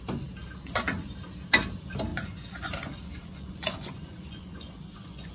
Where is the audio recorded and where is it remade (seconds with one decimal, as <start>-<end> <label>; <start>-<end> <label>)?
0.0-2.1 recorded; 2.1-5.3 remade

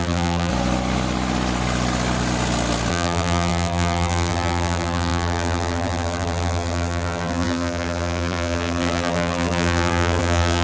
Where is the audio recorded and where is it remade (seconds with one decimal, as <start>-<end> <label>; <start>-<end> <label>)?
0.0-0.5 remade; 0.5-2.9 recorded; 2.9-10.6 remade

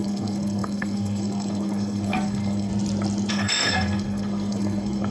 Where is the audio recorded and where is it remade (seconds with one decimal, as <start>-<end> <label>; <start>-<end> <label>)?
0.0-2.7 remade; 2.7-3.3 recorded; 3.3-5.1 remade

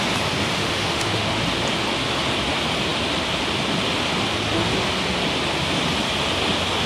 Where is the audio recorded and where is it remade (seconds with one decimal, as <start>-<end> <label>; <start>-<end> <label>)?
0.0-0.6 recorded; 0.6-1.4 remade; 1.4-6.9 recorded

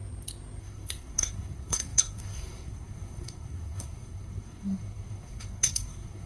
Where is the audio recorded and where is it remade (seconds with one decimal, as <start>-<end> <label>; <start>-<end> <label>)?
0.0-0.6 recorded; 0.6-6.3 remade

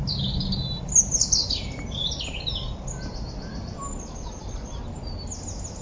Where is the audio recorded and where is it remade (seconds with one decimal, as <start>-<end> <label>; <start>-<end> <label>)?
0.0-5.8 recorded